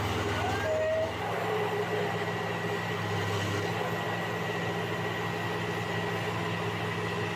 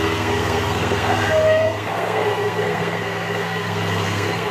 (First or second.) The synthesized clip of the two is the second